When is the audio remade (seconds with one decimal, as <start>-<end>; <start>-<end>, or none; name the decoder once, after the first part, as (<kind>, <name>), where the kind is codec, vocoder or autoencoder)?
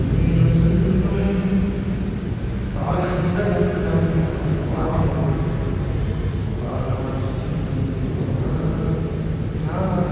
2.7-3.2 (codec, HILCodec); 4.3-5.3; 6.4-7.0